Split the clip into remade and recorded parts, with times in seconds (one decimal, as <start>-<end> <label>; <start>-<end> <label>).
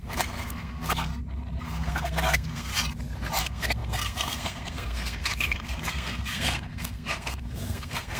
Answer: 0.0-1.1 remade; 1.1-1.6 recorded; 1.6-2.7 remade; 2.7-3.4 recorded; 3.4-8.2 remade